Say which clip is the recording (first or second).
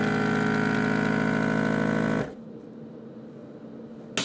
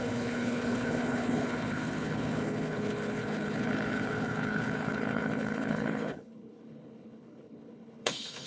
first